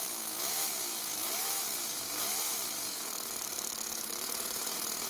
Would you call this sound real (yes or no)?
no